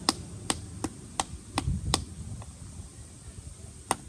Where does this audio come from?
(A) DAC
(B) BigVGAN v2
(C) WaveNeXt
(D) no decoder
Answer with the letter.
D